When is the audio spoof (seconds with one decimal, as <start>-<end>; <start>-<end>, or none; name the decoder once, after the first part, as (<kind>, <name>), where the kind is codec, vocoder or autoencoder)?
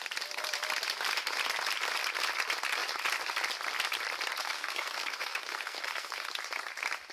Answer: 4.4-6.3 (codec, SNAC)